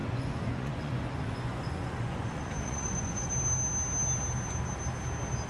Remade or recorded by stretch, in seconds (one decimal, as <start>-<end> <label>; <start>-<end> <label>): 0.0-3.3 remade; 3.3-5.5 recorded